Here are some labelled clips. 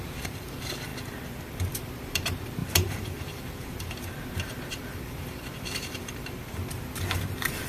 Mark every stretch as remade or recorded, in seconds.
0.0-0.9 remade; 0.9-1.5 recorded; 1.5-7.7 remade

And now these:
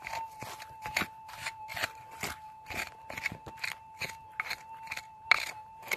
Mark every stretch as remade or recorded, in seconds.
0.0-6.0 recorded

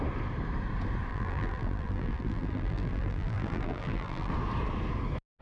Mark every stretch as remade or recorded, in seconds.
0.0-1.1 recorded; 1.1-4.3 remade; 4.3-5.4 recorded